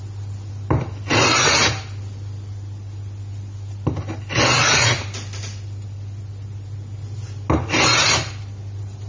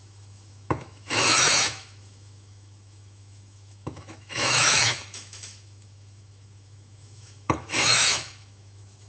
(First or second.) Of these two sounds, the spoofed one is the second